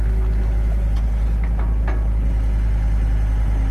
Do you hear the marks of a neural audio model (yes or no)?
no